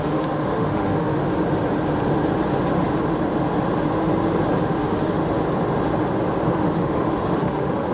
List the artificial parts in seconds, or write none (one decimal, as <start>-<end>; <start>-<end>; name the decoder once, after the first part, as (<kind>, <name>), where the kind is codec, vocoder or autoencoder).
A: 0.0-1.2 (autoencoder, DAC-VAE); 4.6-5.2; 6.7-7.9